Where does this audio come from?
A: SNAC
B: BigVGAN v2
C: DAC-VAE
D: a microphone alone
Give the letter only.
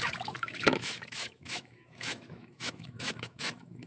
C